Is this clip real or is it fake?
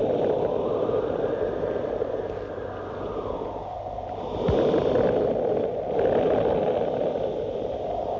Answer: real